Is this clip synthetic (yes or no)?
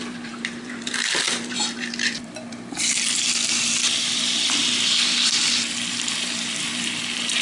yes